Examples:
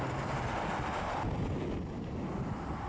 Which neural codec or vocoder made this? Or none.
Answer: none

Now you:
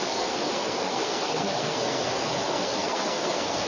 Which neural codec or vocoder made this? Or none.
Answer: codec, SNAC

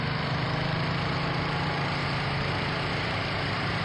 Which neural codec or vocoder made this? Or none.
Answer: vocoder, BigVGAN v2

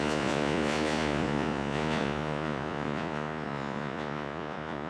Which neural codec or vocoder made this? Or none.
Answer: vocoder, Vocos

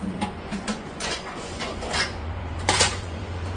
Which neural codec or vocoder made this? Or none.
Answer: vocoder, Vocos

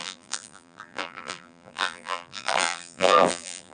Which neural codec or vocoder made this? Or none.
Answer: vocoder, BigVGAN v2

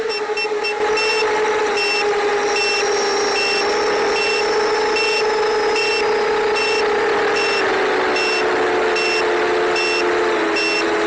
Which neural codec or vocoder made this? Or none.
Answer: none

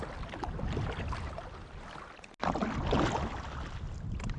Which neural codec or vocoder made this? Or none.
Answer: none